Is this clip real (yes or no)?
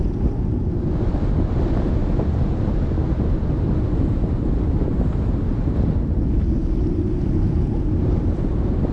yes